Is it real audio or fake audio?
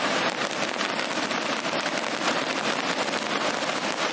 fake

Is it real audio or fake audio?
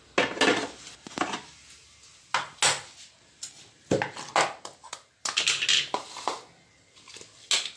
real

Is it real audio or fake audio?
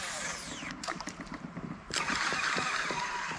fake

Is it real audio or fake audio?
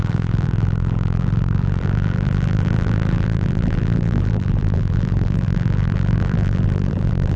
fake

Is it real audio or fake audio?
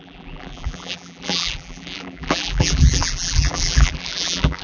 fake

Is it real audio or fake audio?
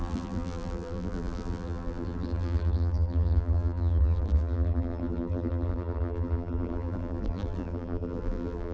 fake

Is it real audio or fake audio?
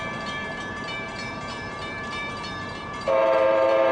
fake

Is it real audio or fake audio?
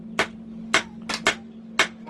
real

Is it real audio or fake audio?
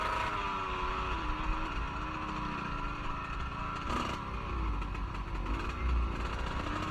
real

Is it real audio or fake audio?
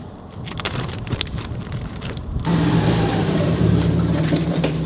fake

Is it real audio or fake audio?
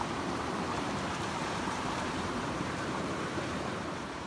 fake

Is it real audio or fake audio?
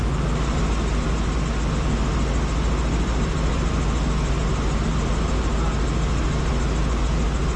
real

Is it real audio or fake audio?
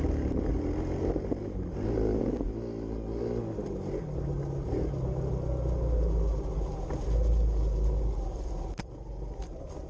real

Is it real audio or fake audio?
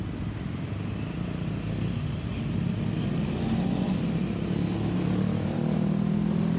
real